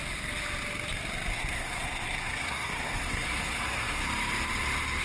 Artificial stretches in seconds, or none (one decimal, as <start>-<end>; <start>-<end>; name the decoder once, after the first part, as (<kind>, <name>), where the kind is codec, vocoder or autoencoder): 1.3-4.0 (codec, SNAC)